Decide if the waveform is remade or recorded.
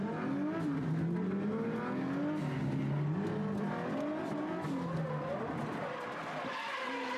recorded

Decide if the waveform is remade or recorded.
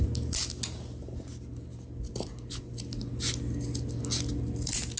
recorded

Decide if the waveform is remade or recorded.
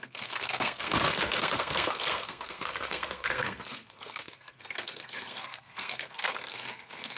remade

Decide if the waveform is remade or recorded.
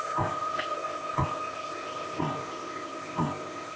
remade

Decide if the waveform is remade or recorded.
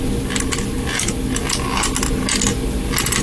recorded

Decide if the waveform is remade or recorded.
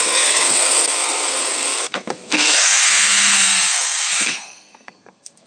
remade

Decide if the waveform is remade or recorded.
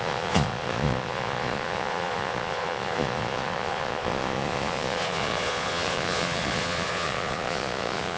remade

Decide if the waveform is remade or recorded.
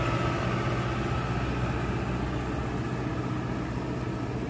recorded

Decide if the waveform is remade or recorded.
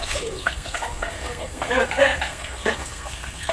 remade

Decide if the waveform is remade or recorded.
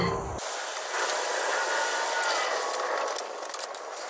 recorded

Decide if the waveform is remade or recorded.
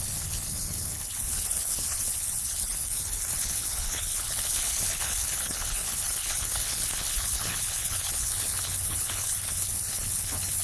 remade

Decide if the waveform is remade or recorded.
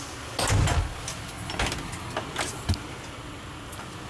recorded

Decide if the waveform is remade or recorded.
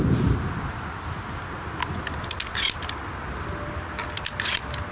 recorded